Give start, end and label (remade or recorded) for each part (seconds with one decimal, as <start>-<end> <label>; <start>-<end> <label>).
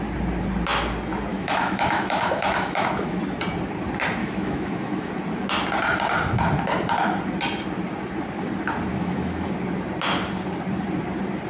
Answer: 0.0-1.3 recorded; 1.3-3.2 remade; 3.2-4.2 recorded; 4.2-5.1 remade; 5.1-8.9 recorded; 8.9-9.5 remade; 9.5-11.5 recorded